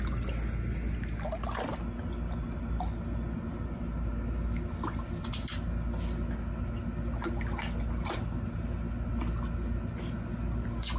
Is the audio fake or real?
real